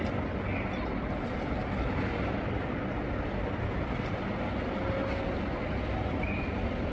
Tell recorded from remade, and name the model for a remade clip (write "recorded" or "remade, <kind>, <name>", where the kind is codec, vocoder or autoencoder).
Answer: recorded